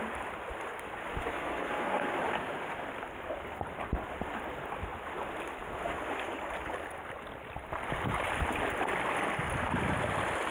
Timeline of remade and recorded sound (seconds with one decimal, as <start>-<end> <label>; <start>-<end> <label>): 0.0-1.1 recorded; 1.1-2.2 remade; 2.2-10.5 recorded